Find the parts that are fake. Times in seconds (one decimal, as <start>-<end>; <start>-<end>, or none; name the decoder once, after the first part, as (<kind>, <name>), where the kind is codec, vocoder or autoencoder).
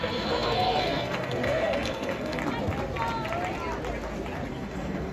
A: 0.0-2.4 (codec, SNAC); 4.5-5.1